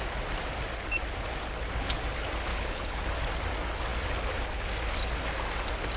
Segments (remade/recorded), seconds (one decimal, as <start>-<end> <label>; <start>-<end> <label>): 0.0-2.5 recorded; 2.5-3.0 remade; 3.0-6.0 recorded